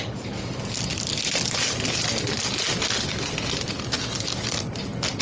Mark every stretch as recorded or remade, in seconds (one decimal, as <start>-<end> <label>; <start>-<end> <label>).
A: 0.0-5.2 recorded